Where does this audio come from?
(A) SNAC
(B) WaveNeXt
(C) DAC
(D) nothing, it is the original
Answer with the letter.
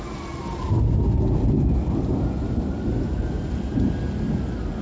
D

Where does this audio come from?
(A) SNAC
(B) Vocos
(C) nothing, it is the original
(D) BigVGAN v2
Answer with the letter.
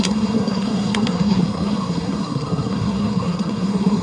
A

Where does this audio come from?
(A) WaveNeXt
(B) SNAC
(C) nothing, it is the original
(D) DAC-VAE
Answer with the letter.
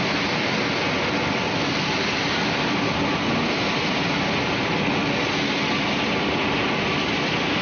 C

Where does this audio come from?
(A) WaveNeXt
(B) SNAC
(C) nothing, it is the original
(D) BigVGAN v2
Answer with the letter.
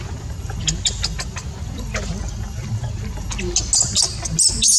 C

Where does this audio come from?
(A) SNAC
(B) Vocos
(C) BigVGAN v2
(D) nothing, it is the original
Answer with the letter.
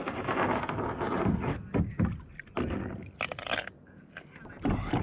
D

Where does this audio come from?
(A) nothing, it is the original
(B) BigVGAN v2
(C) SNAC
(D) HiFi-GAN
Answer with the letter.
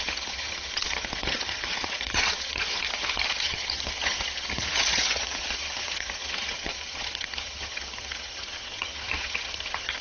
D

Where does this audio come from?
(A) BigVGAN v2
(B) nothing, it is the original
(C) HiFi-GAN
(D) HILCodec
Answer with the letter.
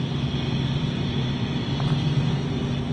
B